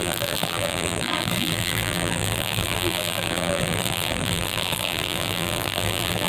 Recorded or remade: remade